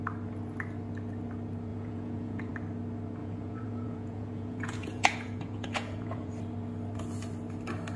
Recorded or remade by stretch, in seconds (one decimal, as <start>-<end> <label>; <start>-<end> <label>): 0.0-1.7 recorded; 1.7-2.5 remade; 2.5-3.2 recorded; 3.2-6.3 remade; 6.3-8.0 recorded